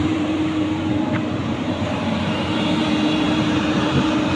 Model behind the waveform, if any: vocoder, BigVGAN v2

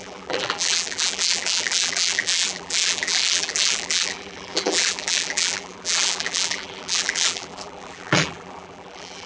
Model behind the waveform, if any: vocoder, BigVGAN v2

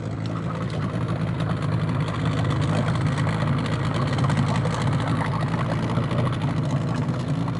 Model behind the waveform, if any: none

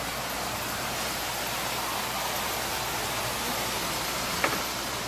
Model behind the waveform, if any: none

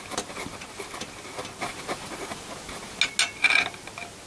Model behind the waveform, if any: none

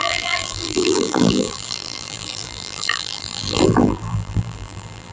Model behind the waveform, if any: vocoder, BigVGAN v2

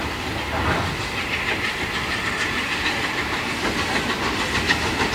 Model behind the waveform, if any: none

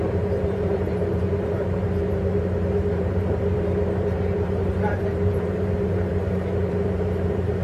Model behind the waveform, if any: vocoder, BigVGAN v2